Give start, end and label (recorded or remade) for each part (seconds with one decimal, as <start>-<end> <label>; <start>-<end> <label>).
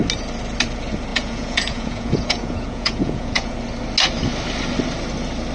0.0-1.1 recorded; 1.1-3.5 remade; 3.5-5.5 recorded